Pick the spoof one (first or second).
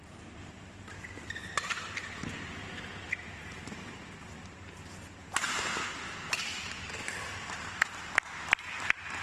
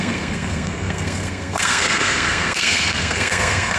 second